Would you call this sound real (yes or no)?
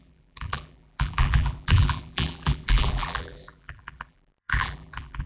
no